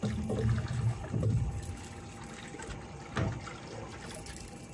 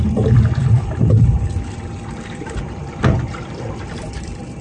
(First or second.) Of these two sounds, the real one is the first